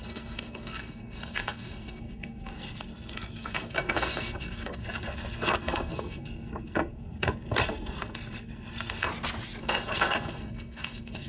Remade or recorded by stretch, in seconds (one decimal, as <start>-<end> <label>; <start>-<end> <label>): 0.0-9.1 remade; 9.1-9.6 recorded; 9.6-11.3 remade

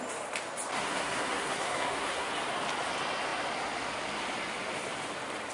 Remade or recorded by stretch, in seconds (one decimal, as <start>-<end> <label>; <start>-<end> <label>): 0.0-0.8 recorded; 0.8-2.3 remade; 2.3-5.5 recorded

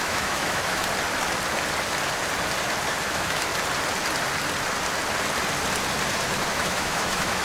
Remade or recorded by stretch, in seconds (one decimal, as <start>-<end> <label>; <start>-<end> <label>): 0.0-0.8 remade; 0.8-3.0 recorded; 3.0-3.5 remade; 3.5-6.5 recorded; 6.5-7.4 remade